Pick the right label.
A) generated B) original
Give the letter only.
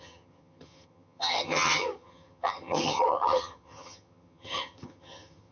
A